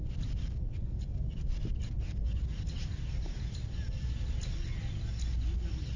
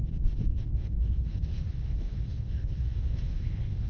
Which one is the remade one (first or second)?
second